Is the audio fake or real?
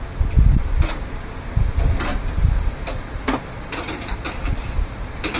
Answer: fake